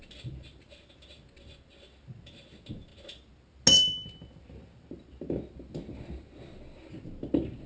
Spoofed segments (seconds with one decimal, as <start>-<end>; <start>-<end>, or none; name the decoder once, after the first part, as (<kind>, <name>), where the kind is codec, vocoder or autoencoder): none